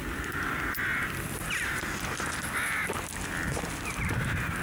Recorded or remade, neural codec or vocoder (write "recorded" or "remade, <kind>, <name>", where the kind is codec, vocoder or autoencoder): remade, vocoder, BigVGAN v2